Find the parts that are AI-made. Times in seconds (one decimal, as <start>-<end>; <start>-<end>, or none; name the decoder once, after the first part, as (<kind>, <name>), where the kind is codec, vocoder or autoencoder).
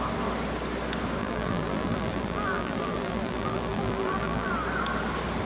1.2-4.5 (vocoder, BigVGAN v2)